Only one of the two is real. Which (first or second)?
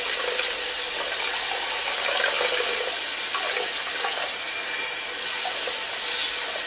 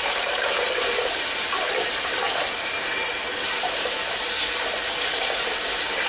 first